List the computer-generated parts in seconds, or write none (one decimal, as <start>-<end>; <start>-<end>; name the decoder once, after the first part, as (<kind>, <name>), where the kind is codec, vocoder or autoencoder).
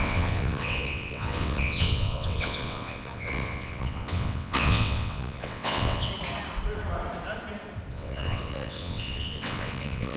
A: 0.0-6.1 (vocoder, WaveNeXt); 7.9-10.2